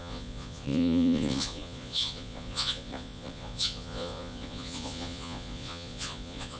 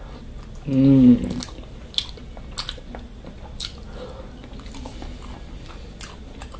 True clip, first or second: second